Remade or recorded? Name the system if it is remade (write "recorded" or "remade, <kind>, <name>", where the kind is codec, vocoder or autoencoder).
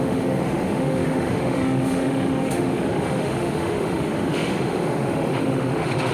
remade, autoencoder, DAC-VAE